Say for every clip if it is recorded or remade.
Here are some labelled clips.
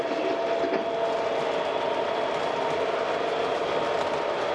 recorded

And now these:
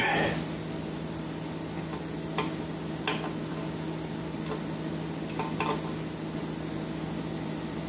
recorded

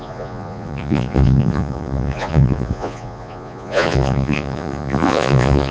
remade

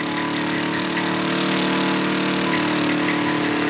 recorded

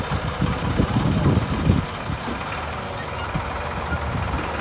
recorded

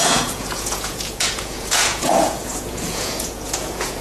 remade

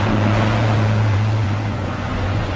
remade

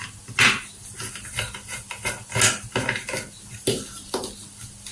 recorded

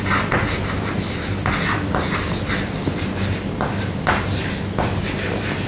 recorded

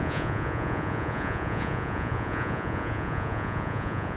remade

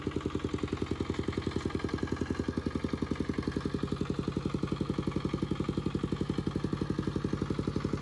recorded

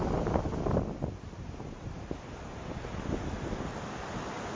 recorded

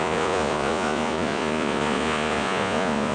remade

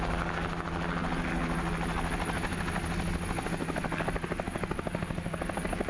recorded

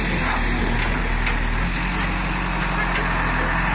recorded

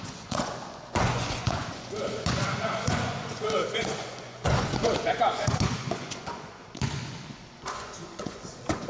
remade